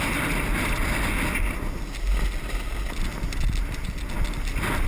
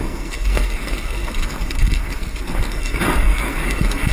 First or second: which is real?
first